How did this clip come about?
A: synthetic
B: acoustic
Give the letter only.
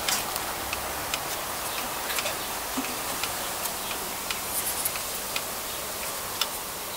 B